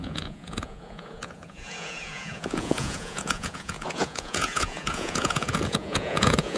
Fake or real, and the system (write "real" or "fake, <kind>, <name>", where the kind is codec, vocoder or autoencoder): fake, vocoder, Vocos